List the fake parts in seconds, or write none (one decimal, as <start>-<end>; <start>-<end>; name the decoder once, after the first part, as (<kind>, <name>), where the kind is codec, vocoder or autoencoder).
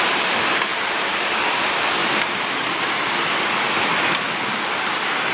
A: 0.7-1.6 (vocoder, BigVGAN v2); 2.0-3.1